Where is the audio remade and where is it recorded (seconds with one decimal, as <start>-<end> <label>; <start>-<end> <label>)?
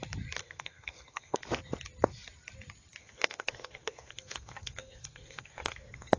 0.0-0.4 recorded; 0.4-1.5 remade; 1.5-3.0 recorded; 3.0-6.2 remade